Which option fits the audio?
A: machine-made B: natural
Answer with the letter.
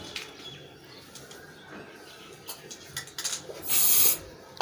B